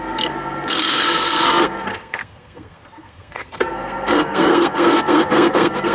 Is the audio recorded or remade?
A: remade